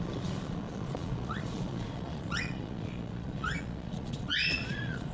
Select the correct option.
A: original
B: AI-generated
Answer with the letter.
B